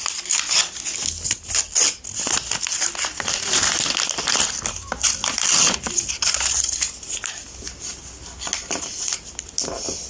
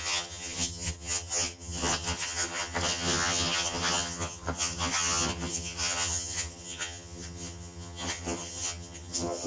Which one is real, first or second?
first